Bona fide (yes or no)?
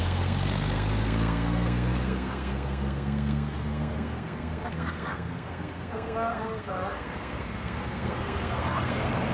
no